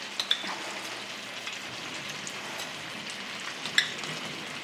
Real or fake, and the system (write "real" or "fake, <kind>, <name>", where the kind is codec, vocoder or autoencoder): real